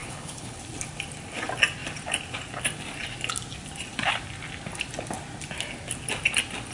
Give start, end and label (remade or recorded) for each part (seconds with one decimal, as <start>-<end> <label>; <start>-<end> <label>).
0.0-0.6 remade; 0.6-6.7 recorded